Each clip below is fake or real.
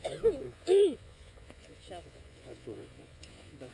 fake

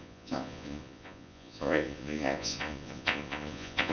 fake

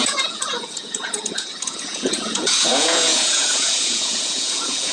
fake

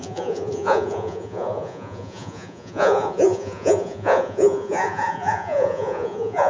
fake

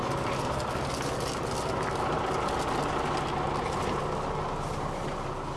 real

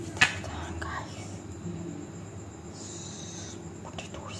real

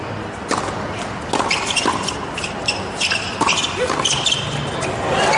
real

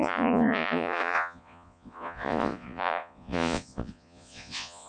fake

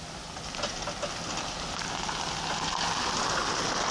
real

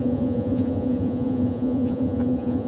fake